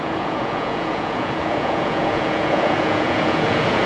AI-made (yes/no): yes